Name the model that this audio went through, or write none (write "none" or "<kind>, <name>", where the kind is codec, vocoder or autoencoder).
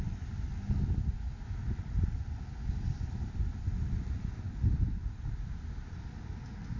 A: none